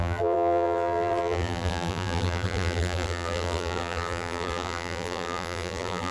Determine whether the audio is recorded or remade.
remade